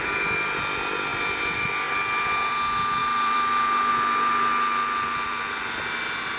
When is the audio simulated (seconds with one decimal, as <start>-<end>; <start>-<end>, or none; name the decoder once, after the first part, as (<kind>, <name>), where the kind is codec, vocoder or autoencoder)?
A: 3.0-3.9 (vocoder, BigVGAN v2)